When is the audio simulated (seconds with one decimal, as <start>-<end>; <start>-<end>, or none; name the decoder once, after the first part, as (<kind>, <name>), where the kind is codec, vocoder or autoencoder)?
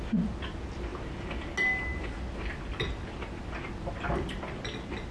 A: none